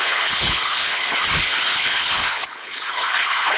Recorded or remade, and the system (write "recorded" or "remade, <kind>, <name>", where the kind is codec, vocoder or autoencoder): remade, codec, HILCodec